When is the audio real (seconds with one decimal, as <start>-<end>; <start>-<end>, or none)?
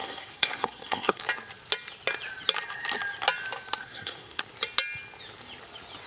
1.2-3.8; 4.4-6.1